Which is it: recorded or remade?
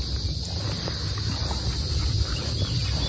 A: recorded